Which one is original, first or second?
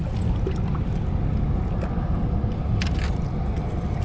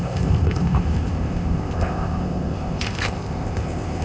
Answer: first